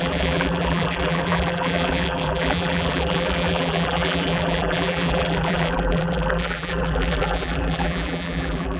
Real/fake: fake